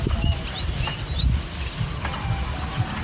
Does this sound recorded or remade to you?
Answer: recorded